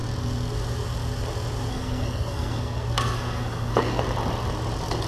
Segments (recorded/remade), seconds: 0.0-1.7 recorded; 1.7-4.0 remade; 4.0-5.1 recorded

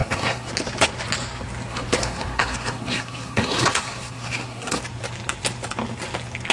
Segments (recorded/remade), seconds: 0.0-0.5 remade; 0.5-1.7 recorded; 1.7-4.8 remade; 4.8-6.5 recorded